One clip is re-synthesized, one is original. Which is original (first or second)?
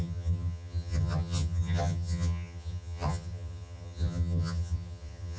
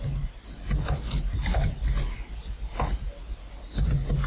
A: second